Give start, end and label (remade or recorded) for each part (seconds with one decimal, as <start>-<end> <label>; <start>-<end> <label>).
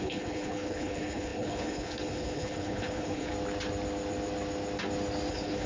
0.0-3.3 remade; 3.3-5.3 recorded; 5.3-5.7 remade